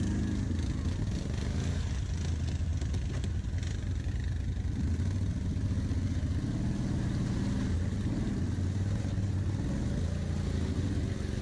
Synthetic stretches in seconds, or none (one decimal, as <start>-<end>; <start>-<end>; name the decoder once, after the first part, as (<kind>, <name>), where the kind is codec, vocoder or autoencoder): none